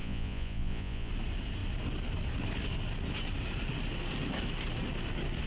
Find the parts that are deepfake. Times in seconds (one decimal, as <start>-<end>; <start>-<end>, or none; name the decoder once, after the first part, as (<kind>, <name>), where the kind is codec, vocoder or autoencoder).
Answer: 0.0-1.1 (vocoder, Vocos)